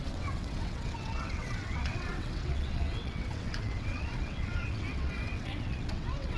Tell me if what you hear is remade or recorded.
remade